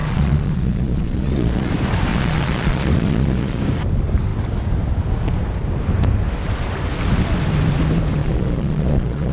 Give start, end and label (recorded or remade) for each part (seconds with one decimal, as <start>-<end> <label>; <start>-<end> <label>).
0.0-1.7 remade; 1.7-2.1 recorded; 2.1-3.6 remade; 3.6-8.2 recorded; 8.2-9.3 remade